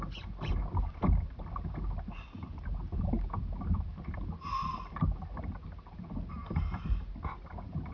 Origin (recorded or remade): recorded